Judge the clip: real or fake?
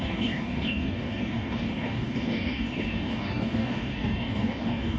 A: fake